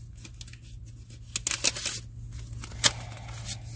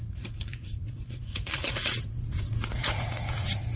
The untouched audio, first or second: first